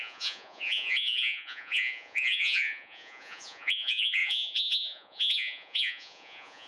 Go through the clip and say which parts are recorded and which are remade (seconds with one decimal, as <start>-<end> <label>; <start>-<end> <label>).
0.0-6.7 remade